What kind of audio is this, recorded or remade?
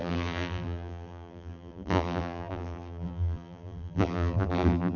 remade